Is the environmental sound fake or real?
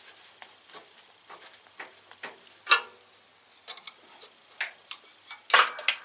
real